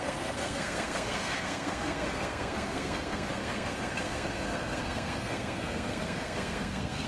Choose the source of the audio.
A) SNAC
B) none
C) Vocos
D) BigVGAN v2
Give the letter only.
A